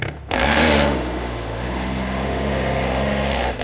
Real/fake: fake